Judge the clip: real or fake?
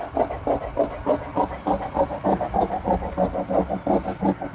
real